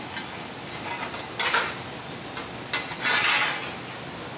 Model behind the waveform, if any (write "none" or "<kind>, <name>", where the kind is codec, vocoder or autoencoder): none